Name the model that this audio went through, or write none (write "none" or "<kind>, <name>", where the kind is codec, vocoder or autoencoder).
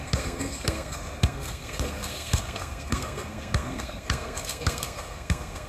codec, SNAC